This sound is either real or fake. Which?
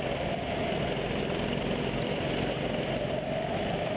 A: real